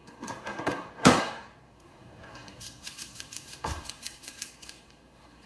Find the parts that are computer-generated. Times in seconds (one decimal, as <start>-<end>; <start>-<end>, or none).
0.0-5.5